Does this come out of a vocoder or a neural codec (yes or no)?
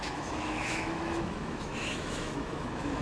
yes